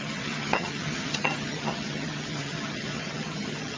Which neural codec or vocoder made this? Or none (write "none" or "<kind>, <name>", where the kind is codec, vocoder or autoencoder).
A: vocoder, HiFi-GAN